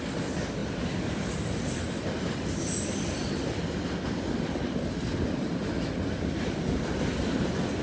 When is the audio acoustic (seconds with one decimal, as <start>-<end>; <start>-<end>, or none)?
0.0-7.8